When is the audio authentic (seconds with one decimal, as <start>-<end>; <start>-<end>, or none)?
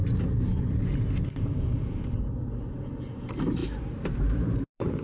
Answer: 0.0-3.0